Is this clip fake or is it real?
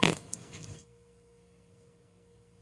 fake